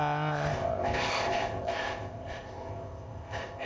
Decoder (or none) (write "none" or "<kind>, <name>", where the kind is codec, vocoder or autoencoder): codec, ZipCodec